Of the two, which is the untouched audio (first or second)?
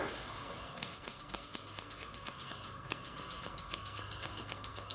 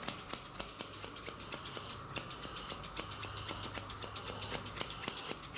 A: second